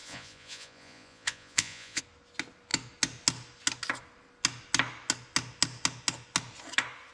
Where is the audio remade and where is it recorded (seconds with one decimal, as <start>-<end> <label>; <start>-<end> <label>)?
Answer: 0.0-2.0 remade; 2.0-7.1 recorded